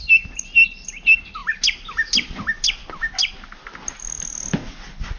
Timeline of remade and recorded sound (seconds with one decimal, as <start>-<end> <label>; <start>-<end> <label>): 0.0-5.2 recorded